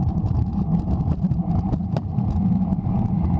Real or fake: fake